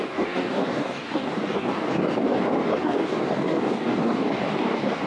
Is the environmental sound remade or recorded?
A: remade